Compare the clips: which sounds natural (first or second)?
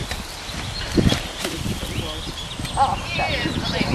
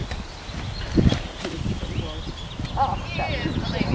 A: second